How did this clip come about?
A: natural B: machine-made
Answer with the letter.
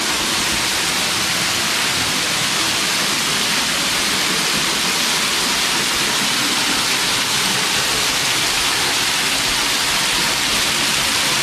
A